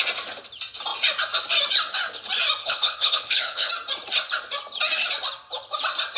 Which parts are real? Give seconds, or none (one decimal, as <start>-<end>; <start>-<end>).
0.0-2.6; 3.7-6.2